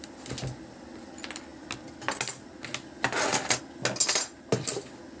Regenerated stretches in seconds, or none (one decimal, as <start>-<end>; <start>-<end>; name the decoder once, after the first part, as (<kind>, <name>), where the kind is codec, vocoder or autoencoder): none